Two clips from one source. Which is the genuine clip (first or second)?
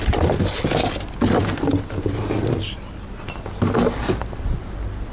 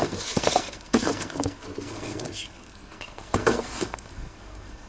first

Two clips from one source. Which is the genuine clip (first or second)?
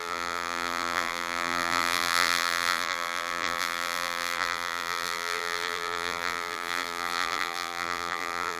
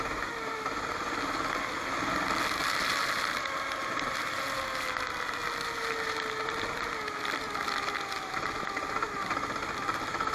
second